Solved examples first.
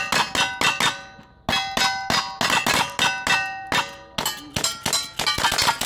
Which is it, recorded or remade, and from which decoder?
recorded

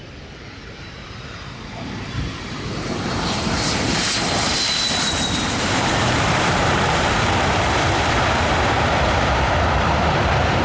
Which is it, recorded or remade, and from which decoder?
remade, vocoder, BigVGAN v2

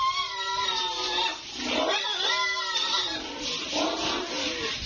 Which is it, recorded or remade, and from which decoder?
recorded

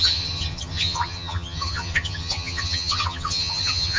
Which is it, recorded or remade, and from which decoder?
remade, vocoder, HiFi-GAN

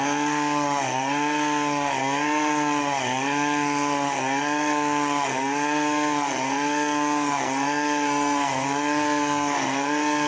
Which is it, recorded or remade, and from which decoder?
remade, codec, SNAC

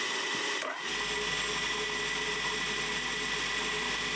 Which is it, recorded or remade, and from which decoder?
recorded